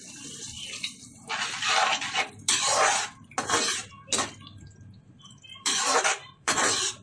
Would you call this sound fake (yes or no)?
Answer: yes